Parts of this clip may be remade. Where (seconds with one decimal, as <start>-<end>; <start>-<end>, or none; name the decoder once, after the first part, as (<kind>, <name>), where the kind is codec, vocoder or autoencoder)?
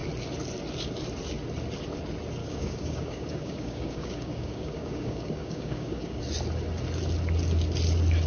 2.4-6.2 (codec, DAC)